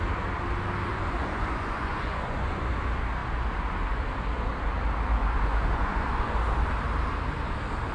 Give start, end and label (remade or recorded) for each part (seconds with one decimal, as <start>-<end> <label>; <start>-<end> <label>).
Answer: 0.0-0.9 recorded; 0.9-2.7 remade; 2.7-5.2 recorded; 5.2-6.3 remade; 6.3-7.9 recorded